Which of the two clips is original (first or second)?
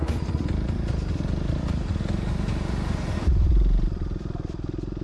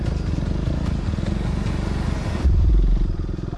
second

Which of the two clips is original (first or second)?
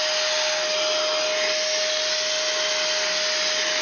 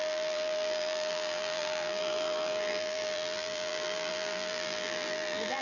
first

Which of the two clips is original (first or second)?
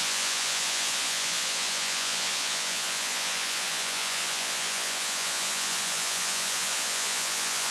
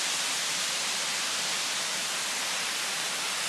second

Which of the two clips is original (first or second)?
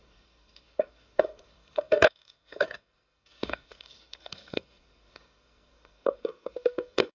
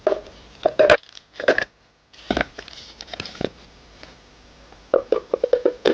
second